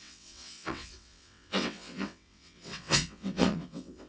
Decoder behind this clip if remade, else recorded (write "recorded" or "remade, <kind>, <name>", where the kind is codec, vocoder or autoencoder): remade, vocoder, WaveNeXt